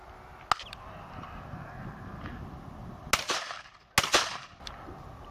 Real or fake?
real